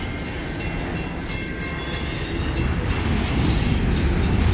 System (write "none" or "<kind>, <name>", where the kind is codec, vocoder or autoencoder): none